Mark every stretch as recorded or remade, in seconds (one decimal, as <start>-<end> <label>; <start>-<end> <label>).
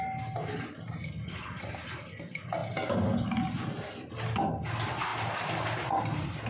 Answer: 0.0-6.5 recorded